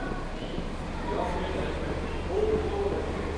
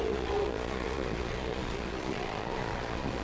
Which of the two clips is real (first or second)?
first